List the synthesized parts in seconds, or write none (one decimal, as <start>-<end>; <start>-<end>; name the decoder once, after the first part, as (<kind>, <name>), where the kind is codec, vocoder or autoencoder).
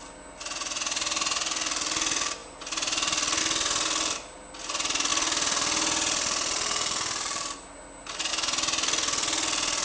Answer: none